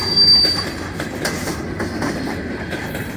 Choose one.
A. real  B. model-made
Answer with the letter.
A